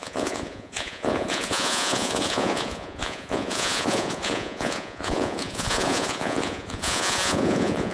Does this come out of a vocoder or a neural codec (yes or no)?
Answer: yes